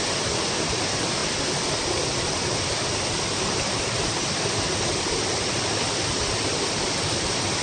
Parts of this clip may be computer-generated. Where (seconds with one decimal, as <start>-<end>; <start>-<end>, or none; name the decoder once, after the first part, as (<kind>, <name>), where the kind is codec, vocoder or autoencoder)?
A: none